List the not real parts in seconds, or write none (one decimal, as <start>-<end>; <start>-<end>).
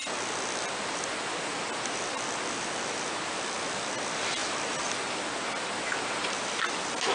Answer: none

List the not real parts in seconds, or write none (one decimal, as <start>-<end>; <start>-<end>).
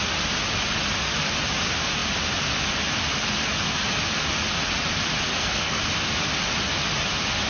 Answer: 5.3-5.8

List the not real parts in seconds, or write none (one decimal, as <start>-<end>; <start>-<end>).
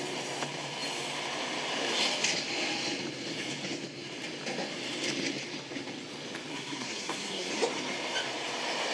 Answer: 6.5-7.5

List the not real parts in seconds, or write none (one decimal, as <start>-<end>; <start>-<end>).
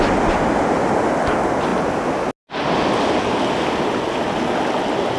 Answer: none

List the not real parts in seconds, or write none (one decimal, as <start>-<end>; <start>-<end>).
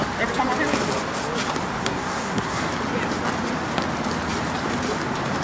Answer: 1.8-2.6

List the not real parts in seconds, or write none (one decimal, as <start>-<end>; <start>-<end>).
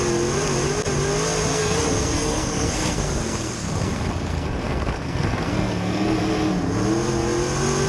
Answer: 1.5-6.2